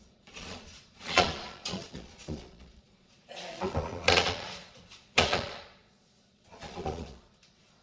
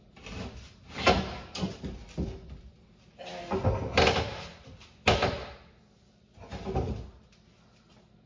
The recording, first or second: second